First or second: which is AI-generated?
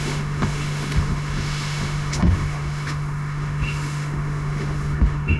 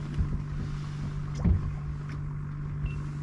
first